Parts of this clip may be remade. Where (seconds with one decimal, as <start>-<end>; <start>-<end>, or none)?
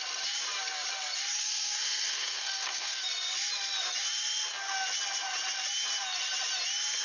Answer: 1.4-3.0